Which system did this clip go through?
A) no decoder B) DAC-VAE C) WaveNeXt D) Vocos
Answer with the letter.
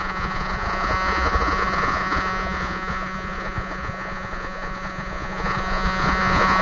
D